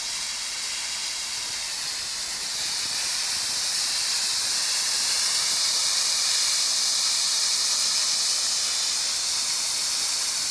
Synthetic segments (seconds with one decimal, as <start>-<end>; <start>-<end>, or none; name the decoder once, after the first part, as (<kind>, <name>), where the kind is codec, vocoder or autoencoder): none

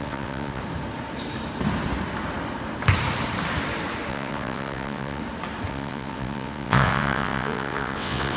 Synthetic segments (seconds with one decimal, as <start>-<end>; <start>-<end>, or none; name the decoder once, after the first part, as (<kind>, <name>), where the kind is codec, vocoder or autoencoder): 0.0-0.6 (vocoder, WaveNeXt); 4.1-5.2; 5.7-8.4

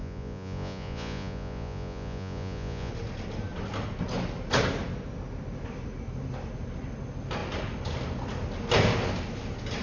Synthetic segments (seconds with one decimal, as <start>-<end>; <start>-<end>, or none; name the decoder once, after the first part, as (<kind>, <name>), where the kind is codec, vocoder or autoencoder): 0.0-2.9 (vocoder, Vocos)